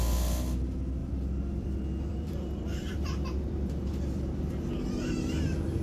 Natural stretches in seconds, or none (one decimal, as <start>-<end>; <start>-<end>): 0.0-1.0; 4.5-5.8

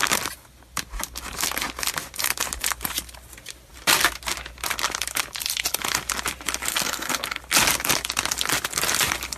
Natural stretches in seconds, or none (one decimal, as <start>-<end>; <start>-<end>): 0.0-6.7; 7.4-9.4

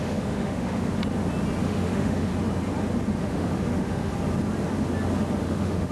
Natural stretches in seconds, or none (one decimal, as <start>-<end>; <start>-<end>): 1.0-1.6; 2.3-3.2; 4.1-5.4

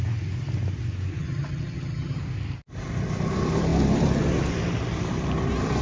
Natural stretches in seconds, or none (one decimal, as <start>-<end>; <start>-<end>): 0.0-1.2; 2.2-5.8

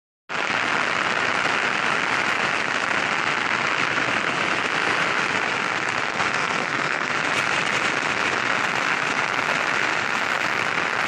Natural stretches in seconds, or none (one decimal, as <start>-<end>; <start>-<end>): 0.0-6.1; 7.1-11.1

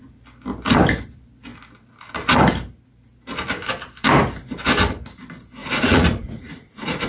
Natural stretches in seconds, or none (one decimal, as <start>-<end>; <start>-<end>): 0.0-5.6

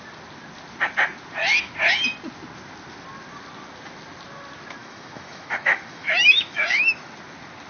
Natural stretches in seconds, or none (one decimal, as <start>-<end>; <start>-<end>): 0.0-4.8; 7.1-7.7